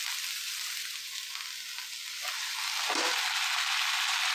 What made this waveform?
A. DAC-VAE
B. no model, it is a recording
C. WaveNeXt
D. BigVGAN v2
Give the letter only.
D